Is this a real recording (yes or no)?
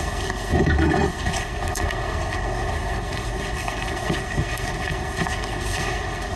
no